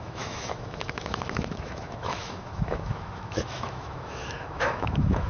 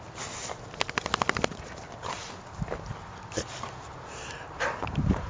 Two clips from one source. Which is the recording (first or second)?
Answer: second